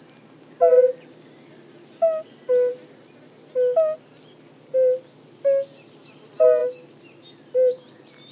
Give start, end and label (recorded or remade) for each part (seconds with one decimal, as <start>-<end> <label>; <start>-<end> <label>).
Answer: 0.0-8.3 recorded